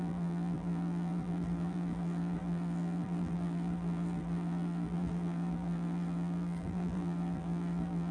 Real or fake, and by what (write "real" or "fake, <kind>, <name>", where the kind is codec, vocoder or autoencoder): fake, vocoder, BigVGAN v2